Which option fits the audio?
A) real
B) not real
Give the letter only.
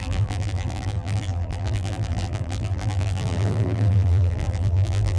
B